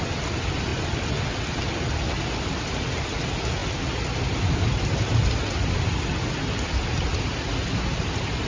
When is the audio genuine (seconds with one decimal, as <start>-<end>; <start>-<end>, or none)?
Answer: 0.0-8.5